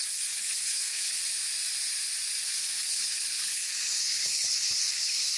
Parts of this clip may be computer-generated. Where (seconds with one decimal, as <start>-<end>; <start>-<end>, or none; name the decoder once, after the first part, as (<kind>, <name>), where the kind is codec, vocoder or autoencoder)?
0.0-1.2 (codec, HILCodec); 2.4-5.4